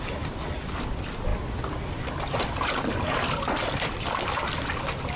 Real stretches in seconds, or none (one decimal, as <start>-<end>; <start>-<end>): 0.0-1.3; 4.4-5.2